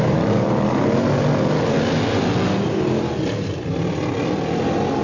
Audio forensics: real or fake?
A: real